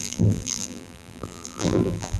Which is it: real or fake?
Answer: fake